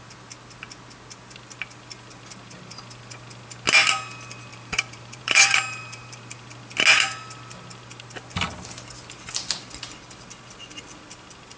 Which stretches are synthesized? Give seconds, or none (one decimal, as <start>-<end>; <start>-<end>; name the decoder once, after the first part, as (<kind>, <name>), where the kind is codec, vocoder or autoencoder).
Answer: 4.5-6.2 (vocoder, BigVGAN v2)